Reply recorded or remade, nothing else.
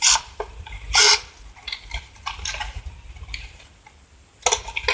recorded